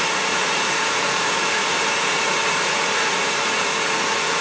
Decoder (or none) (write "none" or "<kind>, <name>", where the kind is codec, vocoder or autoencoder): vocoder, Vocos